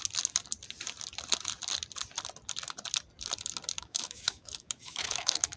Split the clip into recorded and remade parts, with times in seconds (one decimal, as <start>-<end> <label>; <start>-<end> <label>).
0.0-3.8 recorded; 3.8-5.6 remade